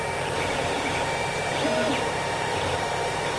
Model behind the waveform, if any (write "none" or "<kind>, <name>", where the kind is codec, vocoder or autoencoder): vocoder, BigVGAN v2